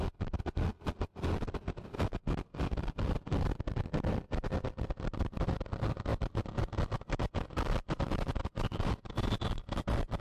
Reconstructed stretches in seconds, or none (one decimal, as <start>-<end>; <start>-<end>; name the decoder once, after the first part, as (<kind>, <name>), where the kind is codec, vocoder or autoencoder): none